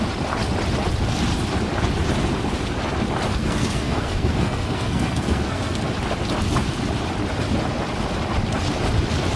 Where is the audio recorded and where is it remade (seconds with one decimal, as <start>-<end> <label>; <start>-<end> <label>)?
0.0-3.3 recorded; 3.3-5.9 remade; 5.9-9.4 recorded